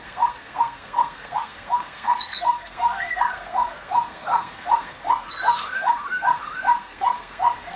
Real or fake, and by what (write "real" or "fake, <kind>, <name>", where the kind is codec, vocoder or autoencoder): fake, codec, SNAC